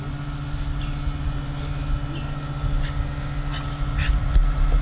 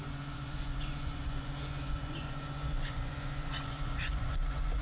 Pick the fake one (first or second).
second